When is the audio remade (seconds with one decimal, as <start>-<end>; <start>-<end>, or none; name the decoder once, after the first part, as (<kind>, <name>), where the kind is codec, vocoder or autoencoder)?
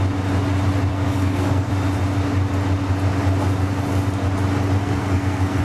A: 0.9-1.7 (codec, SNAC); 4.8-5.6